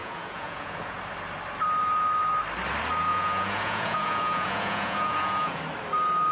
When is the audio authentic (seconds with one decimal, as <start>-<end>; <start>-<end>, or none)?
1.0-3.1; 5.6-6.3